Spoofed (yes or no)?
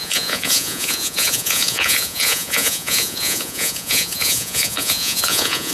yes